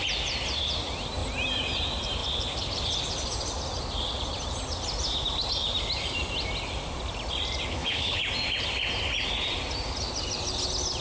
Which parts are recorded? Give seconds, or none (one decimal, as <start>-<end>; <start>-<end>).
0.0-7.7; 8.2-11.0